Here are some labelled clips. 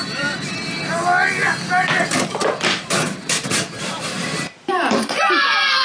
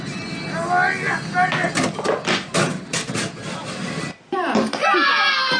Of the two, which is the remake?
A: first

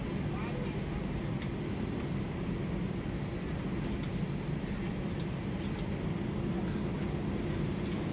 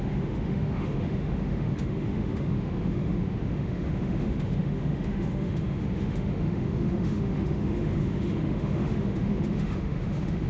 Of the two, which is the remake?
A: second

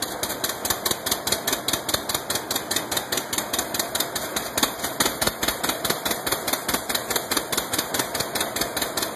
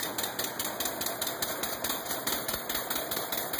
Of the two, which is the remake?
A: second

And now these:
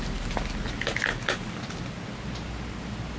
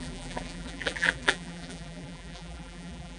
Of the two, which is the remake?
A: second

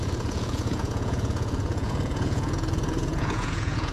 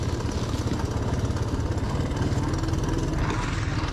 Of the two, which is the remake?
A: first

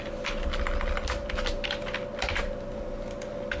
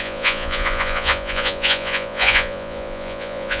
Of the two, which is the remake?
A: second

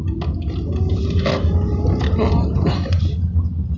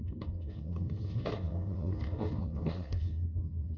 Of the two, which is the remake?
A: second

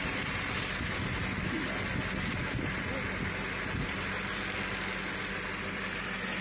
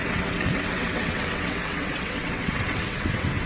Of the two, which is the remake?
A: second